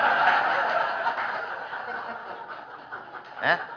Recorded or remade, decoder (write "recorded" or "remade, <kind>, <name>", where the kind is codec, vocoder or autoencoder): recorded